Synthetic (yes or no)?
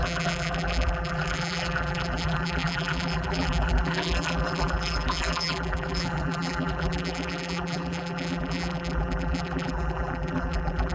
yes